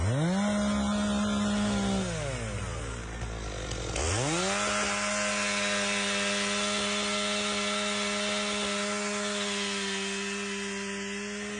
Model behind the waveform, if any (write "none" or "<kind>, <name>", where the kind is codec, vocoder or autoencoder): none